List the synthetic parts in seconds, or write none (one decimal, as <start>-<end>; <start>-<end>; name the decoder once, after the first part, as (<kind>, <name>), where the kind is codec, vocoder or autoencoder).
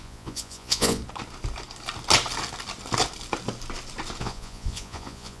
0.0-1.0 (vocoder, Vocos); 4.2-5.4